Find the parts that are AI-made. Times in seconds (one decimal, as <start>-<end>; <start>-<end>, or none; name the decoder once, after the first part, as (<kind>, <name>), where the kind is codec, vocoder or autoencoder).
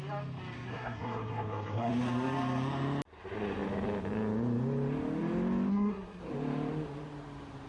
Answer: 0.7-1.9 (codec, SNAC); 5.7-6.2